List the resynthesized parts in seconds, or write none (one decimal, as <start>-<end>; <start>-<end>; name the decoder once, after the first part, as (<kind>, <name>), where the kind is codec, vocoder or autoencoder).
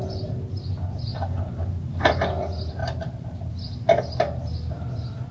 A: 1.1-2.1 (vocoder, BigVGAN v2); 2.8-3.6